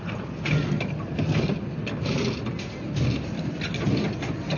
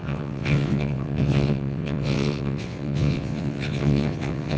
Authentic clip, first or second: first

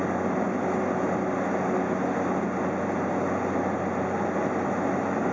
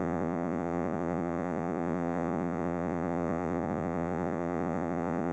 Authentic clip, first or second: first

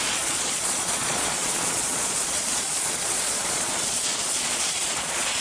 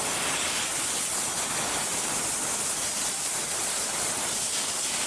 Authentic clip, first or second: second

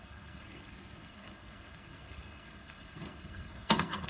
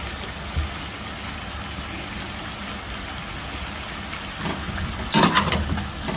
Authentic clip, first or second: second